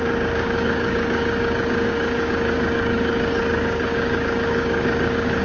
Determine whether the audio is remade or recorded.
remade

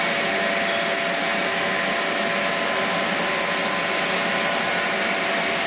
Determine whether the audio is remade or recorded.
recorded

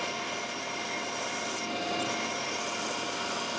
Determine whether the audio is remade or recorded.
recorded